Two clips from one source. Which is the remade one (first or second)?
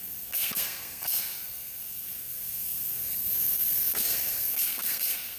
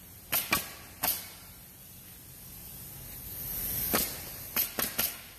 first